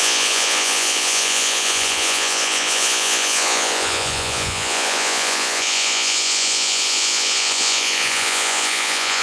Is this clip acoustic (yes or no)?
no